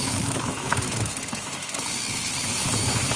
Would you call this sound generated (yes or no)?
yes